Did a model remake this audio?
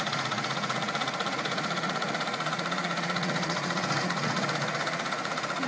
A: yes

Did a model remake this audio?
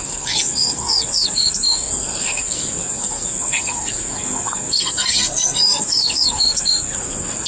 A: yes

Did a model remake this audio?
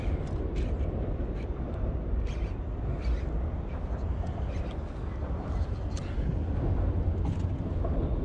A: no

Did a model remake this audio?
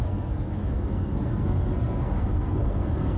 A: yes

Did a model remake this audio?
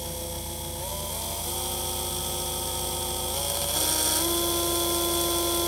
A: no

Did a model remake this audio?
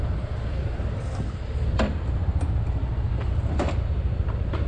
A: no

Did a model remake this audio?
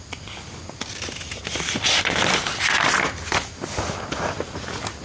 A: no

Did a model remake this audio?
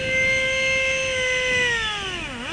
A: no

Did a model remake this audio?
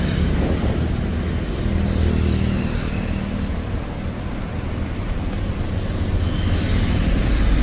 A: no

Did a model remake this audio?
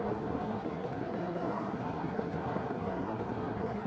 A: yes